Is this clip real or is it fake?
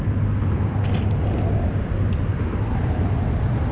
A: real